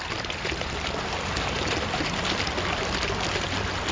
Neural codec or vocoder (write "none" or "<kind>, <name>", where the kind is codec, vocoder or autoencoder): none